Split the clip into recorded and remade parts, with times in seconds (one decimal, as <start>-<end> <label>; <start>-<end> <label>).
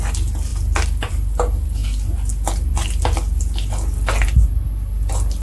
0.0-5.4 recorded